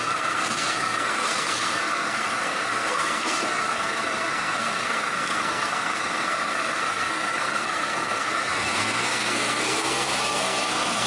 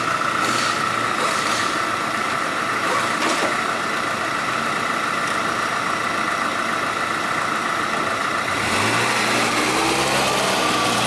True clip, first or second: second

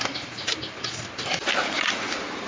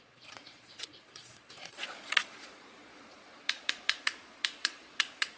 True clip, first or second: first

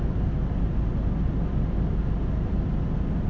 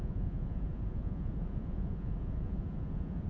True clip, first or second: first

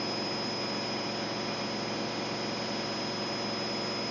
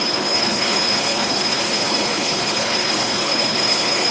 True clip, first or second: first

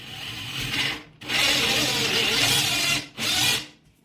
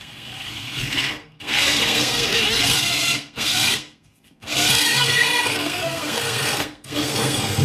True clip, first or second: first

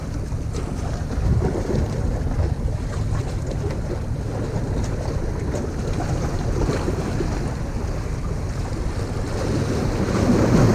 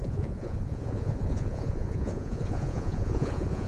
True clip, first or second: first